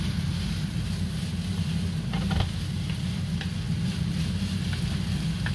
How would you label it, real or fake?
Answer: real